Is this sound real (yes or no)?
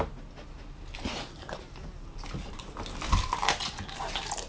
yes